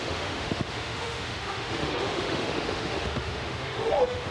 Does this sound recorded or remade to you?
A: remade